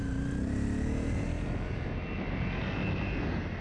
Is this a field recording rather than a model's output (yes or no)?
yes